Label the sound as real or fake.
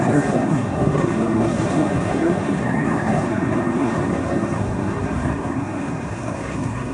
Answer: fake